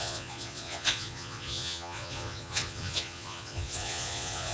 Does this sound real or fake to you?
fake